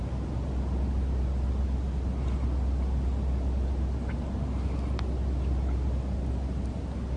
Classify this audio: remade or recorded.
recorded